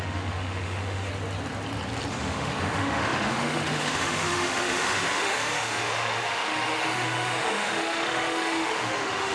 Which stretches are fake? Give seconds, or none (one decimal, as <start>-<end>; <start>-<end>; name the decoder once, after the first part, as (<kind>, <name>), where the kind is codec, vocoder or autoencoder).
0.0-1.1 (autoencoder, DAC-VAE); 2.1-9.3